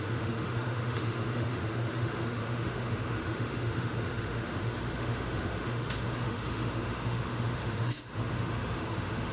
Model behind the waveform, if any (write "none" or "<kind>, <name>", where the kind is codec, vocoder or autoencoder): autoencoder, DAC-VAE